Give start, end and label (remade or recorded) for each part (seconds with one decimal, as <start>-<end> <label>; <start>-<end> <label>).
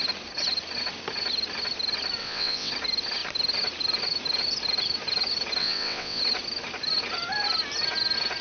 0.0-2.2 recorded; 2.2-2.7 remade; 2.7-5.6 recorded; 5.6-6.2 remade; 6.2-8.4 recorded